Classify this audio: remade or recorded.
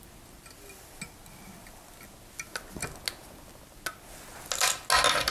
recorded